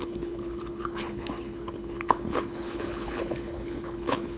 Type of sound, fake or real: fake